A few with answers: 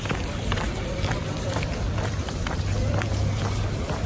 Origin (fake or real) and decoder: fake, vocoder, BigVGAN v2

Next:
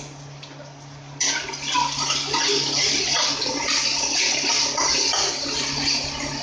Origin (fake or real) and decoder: real